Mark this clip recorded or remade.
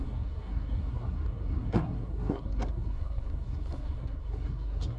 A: remade